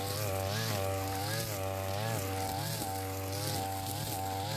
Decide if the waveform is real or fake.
real